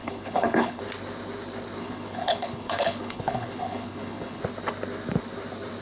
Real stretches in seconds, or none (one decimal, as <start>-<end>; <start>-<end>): 0.8-1.8; 4.4-5.8